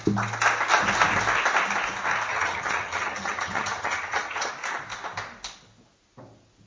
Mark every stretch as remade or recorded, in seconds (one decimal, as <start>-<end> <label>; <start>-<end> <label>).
0.0-2.3 recorded; 2.3-4.5 remade; 4.5-6.7 recorded